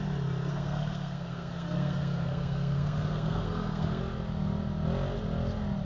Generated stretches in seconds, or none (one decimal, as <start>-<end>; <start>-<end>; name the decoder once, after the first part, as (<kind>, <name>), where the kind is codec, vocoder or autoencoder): 0.5-4.0 (codec, SNAC)